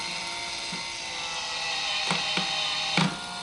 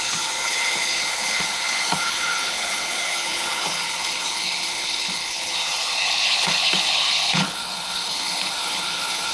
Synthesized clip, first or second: second